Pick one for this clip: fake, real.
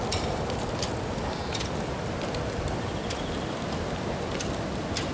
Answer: real